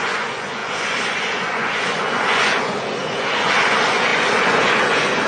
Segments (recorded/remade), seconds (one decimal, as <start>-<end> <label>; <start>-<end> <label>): 0.0-5.3 remade